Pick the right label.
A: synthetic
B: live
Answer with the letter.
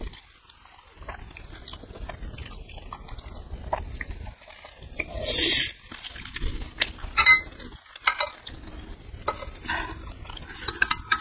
B